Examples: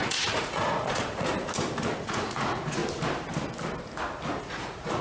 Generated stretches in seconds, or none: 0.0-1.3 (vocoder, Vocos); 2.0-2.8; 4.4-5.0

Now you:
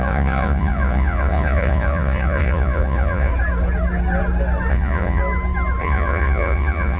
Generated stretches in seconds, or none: 0.0-3.3 (vocoder, Vocos); 4.7-5.2; 5.8-7.0

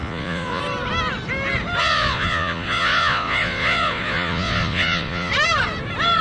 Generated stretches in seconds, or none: 0.0-0.6 (vocoder, Vocos); 1.8-5.3